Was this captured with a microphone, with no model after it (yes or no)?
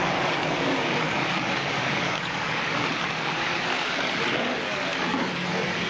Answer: no